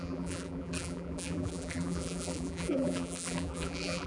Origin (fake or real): fake